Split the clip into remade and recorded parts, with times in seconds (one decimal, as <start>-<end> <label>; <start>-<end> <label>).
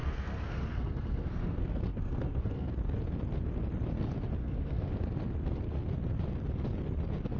0.0-2.7 remade; 2.7-4.4 recorded; 4.4-4.9 remade; 4.9-7.4 recorded